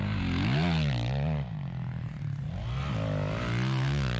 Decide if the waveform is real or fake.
real